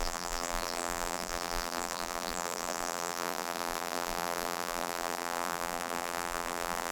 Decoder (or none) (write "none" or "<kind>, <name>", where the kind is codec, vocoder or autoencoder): vocoder, BigVGAN v2